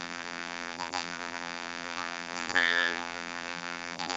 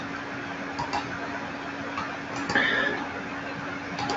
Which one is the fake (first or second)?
first